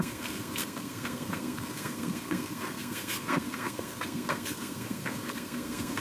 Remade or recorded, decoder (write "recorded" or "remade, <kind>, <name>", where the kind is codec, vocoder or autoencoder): remade, codec, SNAC